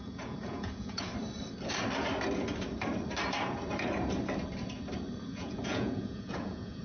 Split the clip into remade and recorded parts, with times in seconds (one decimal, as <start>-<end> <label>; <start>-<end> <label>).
0.0-1.1 remade; 1.1-5.2 recorded; 5.2-6.8 remade